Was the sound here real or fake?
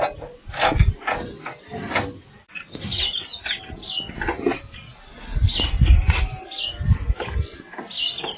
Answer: real